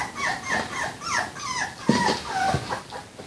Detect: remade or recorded recorded